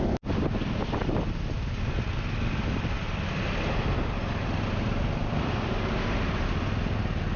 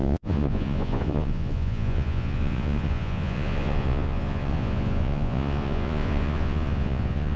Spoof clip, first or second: second